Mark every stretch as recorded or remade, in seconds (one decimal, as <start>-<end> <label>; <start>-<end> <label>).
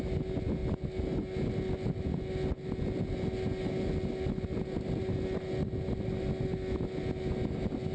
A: 0.0-7.9 recorded